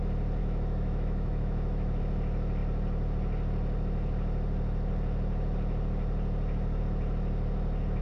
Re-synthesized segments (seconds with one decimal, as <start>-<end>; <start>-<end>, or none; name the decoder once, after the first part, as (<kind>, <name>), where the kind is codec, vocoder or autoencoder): 0.4-2.0 (autoencoder, DAC-VAE)